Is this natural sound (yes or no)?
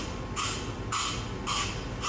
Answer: yes